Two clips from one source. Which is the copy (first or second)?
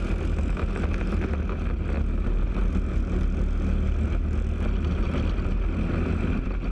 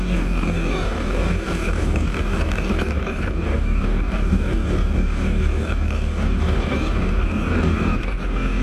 second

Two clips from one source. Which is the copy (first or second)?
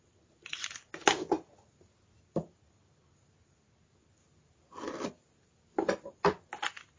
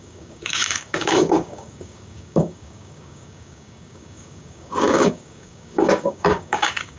second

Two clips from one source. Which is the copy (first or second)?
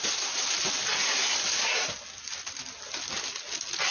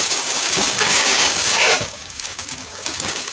second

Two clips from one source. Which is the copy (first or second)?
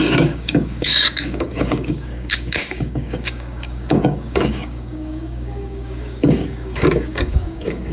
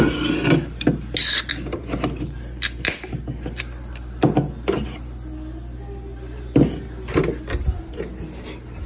first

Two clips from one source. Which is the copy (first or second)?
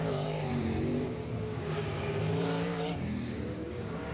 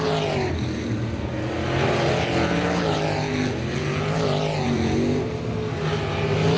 first